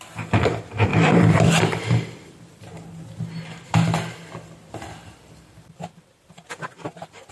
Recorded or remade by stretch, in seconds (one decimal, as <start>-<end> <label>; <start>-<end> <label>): 0.0-7.3 remade